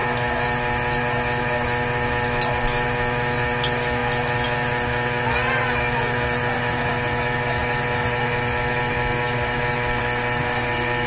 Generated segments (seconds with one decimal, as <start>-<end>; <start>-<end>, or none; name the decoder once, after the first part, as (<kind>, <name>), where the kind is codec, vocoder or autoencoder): none